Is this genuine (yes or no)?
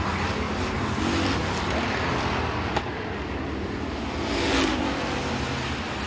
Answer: yes